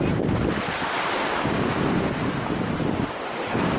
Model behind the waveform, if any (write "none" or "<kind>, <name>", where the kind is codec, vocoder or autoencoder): none